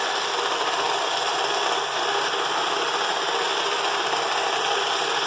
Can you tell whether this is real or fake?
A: real